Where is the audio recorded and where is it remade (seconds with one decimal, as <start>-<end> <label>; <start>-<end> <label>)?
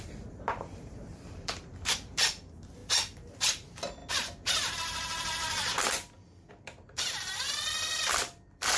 0.0-2.8 remade; 2.8-3.4 recorded; 3.4-8.8 remade